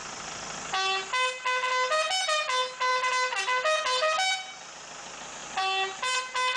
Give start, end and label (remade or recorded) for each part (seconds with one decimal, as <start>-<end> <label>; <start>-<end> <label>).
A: 0.0-6.6 recorded

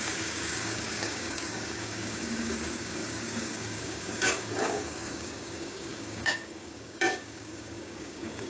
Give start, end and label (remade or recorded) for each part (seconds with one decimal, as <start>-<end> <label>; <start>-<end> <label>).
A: 0.0-8.5 remade

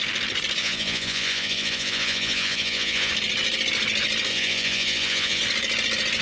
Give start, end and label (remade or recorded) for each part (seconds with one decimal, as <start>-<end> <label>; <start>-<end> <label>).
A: 0.0-0.6 recorded; 0.6-3.1 remade; 3.1-4.3 recorded; 4.3-5.4 remade; 5.4-6.2 recorded

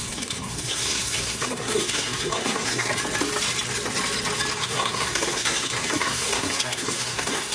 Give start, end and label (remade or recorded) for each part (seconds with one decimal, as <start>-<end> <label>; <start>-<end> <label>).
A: 0.0-2.9 remade; 2.9-4.6 recorded; 4.6-7.5 remade

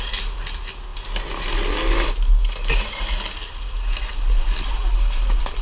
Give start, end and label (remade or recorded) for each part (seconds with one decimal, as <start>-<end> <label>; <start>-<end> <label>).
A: 0.0-5.6 recorded